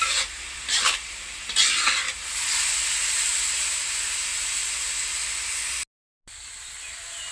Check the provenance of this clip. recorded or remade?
recorded